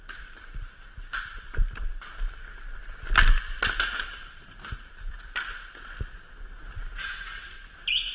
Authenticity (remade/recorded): remade